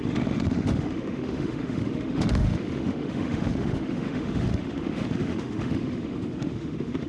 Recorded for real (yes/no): no